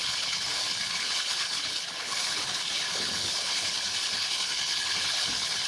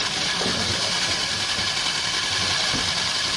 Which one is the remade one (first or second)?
first